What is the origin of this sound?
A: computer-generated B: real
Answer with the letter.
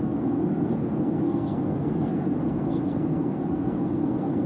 A